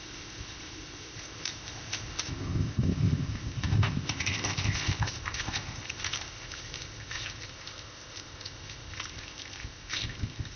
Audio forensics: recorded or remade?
remade